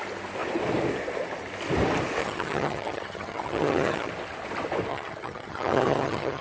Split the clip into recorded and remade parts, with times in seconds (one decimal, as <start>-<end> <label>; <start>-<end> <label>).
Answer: 0.0-2.2 recorded; 2.2-4.1 remade; 4.1-4.9 recorded; 4.9-6.4 remade